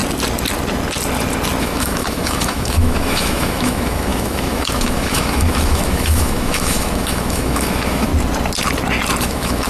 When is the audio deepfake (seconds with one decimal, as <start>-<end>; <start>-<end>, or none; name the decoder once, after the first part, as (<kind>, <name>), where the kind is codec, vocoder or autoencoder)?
1.6-8.1 (autoencoder, DAC-VAE); 9.2-9.7